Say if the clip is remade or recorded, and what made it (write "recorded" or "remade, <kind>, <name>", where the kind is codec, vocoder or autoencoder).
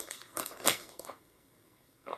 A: remade, codec, SNAC